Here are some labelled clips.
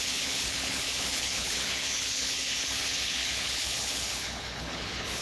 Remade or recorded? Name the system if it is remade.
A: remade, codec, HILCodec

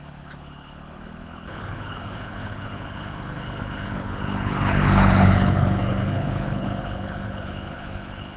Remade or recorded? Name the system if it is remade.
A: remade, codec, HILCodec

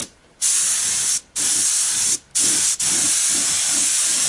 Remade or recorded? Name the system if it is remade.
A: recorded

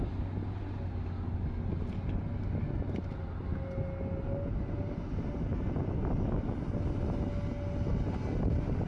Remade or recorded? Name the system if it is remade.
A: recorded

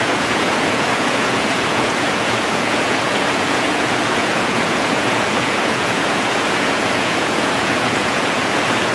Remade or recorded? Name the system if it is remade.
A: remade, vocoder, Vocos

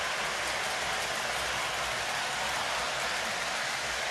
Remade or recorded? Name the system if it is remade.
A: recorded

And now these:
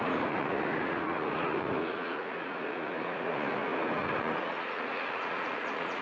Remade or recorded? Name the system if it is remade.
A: remade, vocoder, Vocos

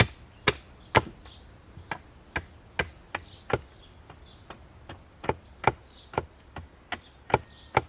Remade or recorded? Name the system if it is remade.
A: recorded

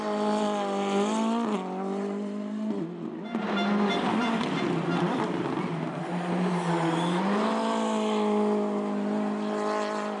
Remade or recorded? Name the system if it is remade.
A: recorded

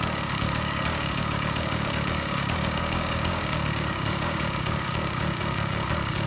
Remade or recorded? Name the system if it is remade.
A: remade, codec, DAC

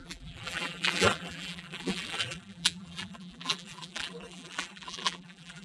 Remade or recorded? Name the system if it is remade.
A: remade, vocoder, BigVGAN v2